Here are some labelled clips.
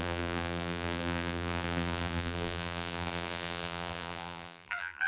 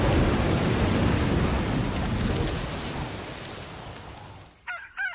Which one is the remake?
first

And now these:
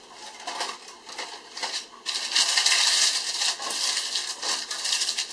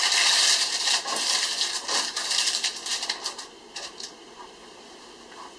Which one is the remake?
second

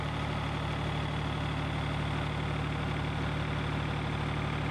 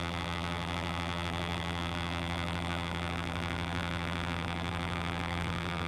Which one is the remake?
second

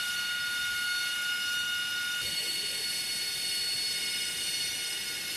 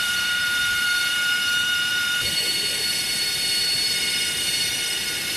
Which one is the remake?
second